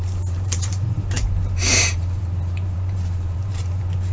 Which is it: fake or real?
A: fake